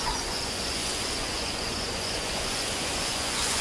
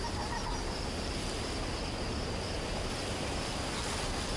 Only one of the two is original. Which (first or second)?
second